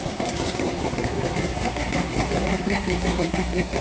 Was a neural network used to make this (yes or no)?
yes